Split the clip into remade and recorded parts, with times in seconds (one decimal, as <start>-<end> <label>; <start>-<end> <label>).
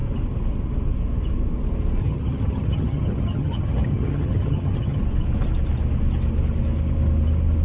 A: 0.0-2.0 recorded; 2.0-5.0 remade; 5.0-7.6 recorded